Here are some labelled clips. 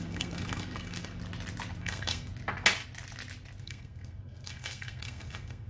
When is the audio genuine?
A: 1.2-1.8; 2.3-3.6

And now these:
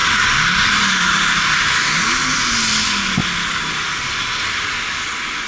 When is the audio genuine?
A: 0.0-5.5

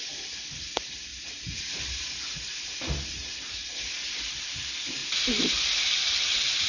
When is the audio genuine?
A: 3.2-3.7; 5.0-6.1

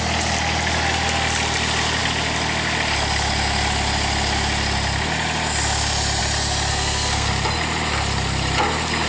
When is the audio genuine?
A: 0.0-6.7; 7.3-9.1